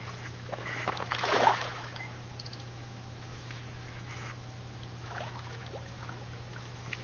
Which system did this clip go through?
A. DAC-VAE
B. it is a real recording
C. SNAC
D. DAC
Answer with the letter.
A